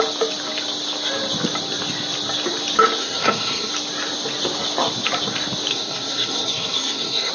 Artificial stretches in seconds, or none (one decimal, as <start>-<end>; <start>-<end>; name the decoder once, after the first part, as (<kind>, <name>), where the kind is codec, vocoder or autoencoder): 3.0-3.7 (codec, SNAC); 5.7-7.3